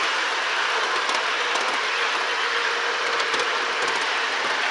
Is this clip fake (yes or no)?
no